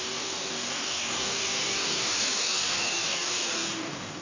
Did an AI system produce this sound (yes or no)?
yes